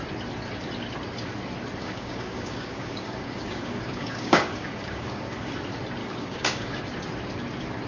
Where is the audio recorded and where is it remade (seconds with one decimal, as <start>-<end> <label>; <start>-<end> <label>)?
0.0-1.8 recorded; 1.8-5.5 remade; 5.5-6.0 recorded; 6.0-6.8 remade; 6.8-7.9 recorded